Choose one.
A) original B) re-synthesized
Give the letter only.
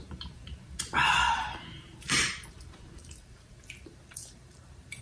B